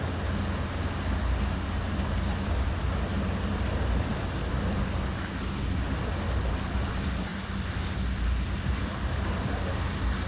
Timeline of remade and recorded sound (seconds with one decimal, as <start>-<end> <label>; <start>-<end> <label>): 0.0-10.3 recorded